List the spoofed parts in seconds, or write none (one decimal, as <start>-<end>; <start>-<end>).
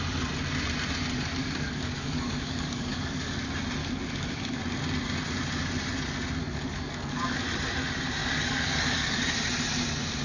1.4-3.3; 3.8-4.6; 6.4-7.4; 8.2-9.3